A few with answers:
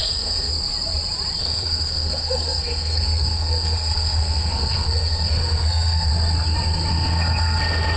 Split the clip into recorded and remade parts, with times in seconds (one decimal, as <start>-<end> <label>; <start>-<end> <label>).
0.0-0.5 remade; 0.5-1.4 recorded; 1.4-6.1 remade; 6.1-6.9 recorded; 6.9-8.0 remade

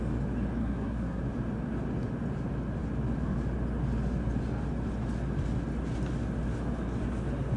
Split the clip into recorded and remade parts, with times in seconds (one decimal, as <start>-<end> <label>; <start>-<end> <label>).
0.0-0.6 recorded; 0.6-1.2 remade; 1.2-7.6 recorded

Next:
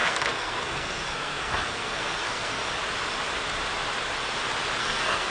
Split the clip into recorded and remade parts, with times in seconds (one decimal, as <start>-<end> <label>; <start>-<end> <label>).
0.0-2.6 remade; 2.6-4.8 recorded; 4.8-5.3 remade

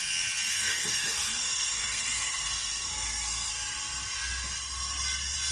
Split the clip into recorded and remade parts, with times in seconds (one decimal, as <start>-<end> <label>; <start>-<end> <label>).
0.0-0.5 recorded; 0.5-3.5 remade; 3.5-5.5 recorded